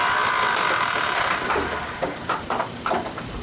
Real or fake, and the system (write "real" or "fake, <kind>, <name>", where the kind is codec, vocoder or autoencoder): real